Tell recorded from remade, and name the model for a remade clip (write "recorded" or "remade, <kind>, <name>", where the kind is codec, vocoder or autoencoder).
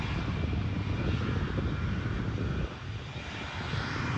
recorded